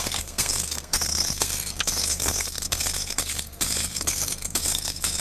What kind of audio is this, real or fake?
fake